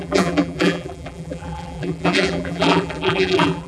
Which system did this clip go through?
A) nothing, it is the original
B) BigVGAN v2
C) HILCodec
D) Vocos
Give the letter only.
B